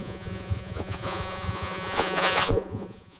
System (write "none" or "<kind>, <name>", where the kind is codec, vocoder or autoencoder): vocoder, Vocos